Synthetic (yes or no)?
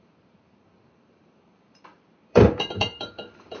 yes